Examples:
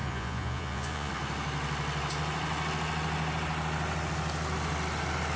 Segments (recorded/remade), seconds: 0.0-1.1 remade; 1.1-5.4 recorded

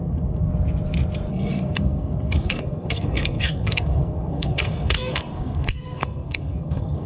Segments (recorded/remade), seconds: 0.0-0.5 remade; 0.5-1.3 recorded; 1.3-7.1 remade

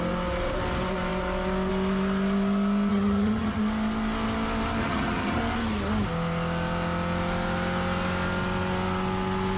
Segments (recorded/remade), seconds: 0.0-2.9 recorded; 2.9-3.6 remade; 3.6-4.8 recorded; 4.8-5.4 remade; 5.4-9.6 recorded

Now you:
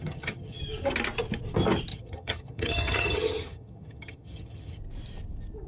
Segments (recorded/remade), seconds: 0.0-0.6 remade; 0.6-1.9 recorded; 1.9-4.8 remade; 4.8-5.7 recorded

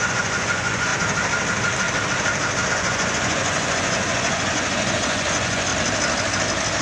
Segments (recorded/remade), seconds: 0.0-0.9 remade; 0.9-2.7 recorded; 2.7-5.7 remade; 5.7-6.8 recorded

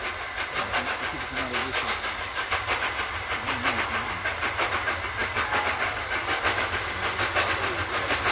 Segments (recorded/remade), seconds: 0.0-1.6 recorded; 1.6-2.5 remade; 2.5-5.2 recorded; 5.2-6.4 remade; 6.4-8.3 recorded

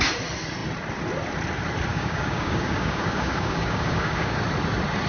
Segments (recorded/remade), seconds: 0.0-1.9 recorded; 1.9-4.4 remade; 4.4-5.1 recorded